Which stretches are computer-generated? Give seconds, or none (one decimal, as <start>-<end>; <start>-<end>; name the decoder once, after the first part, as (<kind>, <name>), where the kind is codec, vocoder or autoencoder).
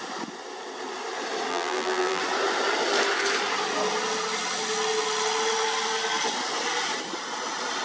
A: 1.5-2.2 (vocoder, BigVGAN v2)